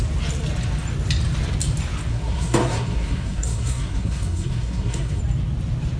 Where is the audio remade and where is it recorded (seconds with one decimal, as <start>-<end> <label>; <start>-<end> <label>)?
0.0-2.1 recorded; 2.1-5.2 remade; 5.2-6.0 recorded